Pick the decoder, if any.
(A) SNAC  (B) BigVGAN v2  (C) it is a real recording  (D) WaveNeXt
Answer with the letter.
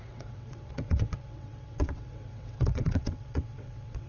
D